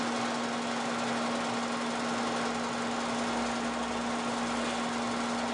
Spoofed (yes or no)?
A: no